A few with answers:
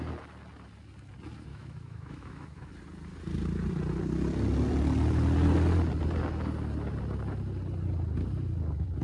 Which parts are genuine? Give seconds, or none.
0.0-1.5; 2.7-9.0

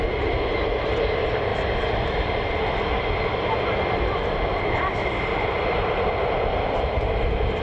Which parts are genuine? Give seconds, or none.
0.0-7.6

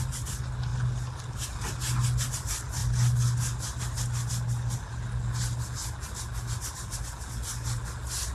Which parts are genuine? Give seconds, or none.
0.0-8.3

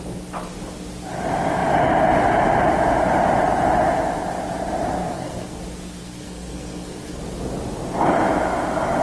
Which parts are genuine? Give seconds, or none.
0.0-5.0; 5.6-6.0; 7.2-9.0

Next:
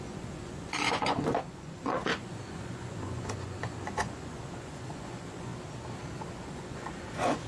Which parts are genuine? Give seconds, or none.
5.5-6.3

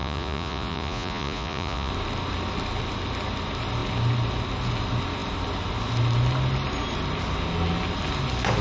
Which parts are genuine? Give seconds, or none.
1.9-8.6

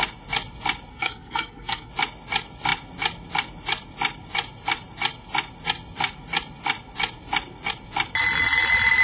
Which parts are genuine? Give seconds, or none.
0.0-0.9; 1.9-9.0